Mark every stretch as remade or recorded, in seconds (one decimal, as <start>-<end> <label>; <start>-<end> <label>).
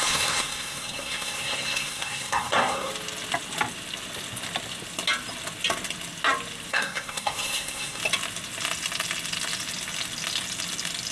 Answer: 0.0-2.9 remade; 2.9-6.7 recorded; 6.7-8.0 remade; 8.0-11.1 recorded